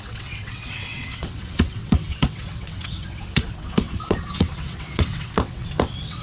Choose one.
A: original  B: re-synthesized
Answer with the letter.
B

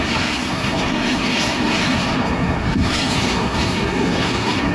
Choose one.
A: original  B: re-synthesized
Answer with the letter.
B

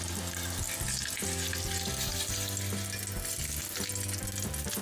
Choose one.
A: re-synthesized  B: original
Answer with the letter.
B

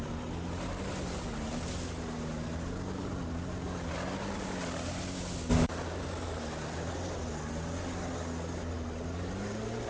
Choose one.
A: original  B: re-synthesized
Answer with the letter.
A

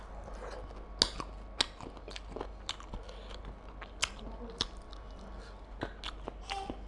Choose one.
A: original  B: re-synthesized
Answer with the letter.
A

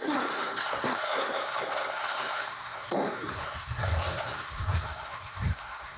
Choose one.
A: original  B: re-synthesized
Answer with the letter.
B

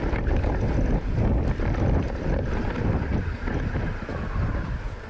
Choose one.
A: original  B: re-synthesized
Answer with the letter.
B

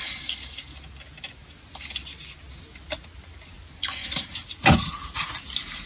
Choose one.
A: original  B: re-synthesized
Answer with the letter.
A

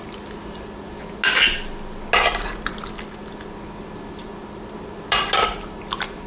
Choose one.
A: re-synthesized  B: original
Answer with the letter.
B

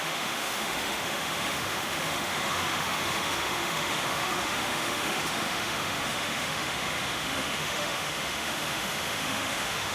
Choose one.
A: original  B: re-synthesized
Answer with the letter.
B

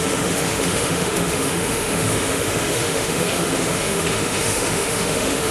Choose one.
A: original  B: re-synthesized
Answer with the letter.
B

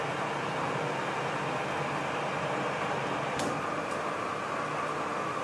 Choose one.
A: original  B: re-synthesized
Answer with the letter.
A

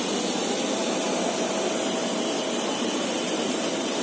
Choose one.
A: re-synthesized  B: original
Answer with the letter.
B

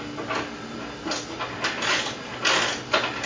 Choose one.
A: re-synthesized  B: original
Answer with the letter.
B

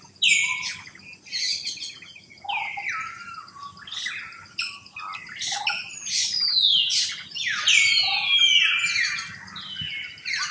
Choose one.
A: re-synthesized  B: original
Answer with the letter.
B